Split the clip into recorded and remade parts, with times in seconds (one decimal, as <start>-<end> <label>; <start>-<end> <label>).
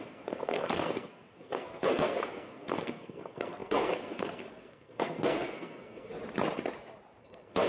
0.0-6.2 remade; 6.2-7.2 recorded; 7.2-7.7 remade